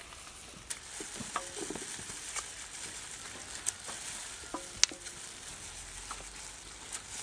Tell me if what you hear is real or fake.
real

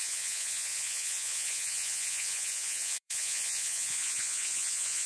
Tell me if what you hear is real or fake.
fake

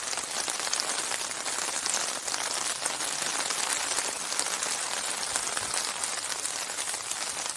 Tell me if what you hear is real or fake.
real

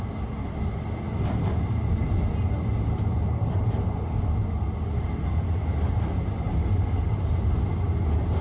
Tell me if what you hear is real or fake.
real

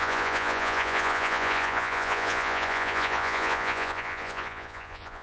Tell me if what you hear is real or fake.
fake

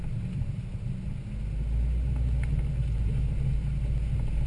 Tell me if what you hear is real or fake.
real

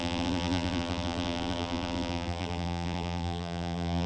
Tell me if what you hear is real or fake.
fake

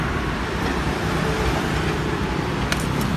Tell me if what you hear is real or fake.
fake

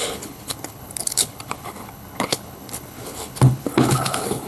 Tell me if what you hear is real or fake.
fake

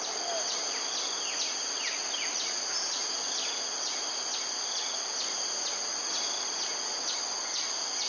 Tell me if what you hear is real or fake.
real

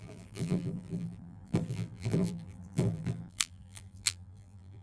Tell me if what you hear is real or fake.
fake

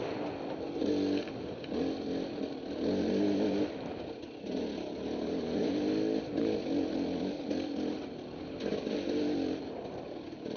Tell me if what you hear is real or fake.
real